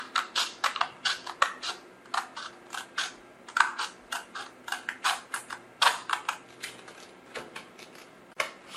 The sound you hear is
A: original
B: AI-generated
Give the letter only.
A